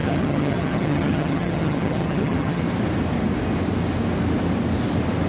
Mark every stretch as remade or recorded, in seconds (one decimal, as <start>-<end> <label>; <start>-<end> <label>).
0.0-2.6 remade; 2.6-5.3 recorded